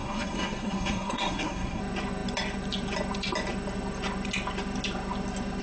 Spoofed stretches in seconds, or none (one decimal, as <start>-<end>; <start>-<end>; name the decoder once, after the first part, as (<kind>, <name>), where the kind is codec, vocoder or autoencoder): 0.0-1.8 (codec, SNAC)